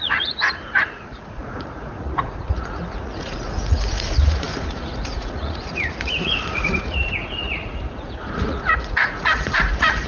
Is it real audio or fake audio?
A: fake